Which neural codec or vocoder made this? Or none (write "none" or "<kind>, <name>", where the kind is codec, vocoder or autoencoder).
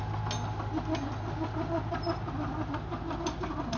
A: none